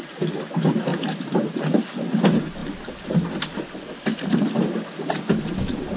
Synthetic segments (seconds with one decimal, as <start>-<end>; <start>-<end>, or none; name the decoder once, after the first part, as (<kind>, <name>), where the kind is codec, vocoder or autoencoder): none